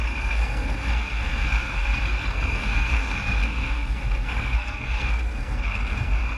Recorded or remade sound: remade